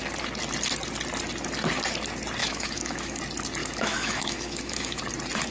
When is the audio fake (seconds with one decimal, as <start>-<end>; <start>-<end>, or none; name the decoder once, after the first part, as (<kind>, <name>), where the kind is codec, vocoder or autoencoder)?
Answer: 2.4-3.2 (autoencoder, DAC-VAE); 3.6-5.0